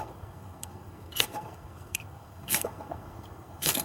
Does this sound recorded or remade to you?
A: remade